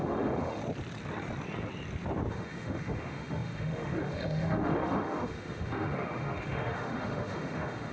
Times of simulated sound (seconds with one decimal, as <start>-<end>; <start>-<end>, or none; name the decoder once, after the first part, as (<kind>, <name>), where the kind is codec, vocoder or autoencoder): 0.0-0.6 (autoencoder, DAC-VAE); 2.3-7.9